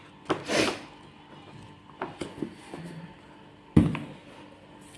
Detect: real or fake real